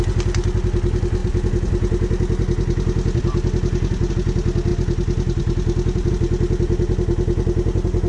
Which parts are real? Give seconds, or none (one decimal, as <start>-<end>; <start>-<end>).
0.0-8.1